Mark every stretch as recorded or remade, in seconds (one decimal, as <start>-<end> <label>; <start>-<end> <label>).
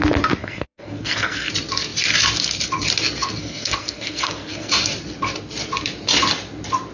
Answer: 0.0-0.4 recorded; 0.4-1.5 remade; 1.5-3.4 recorded; 3.4-4.7 remade; 4.7-6.9 recorded